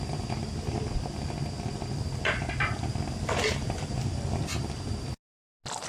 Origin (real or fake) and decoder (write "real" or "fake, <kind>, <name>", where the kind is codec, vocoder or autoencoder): real